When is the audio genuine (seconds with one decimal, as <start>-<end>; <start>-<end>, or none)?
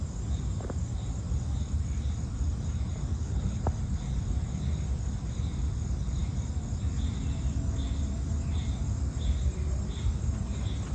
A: 0.0-3.1; 3.6-10.9